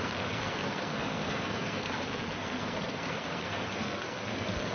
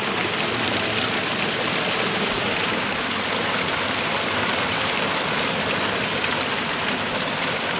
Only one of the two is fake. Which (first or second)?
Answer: first